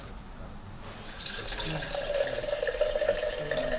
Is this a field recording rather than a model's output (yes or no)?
no